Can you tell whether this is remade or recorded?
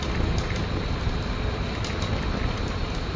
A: recorded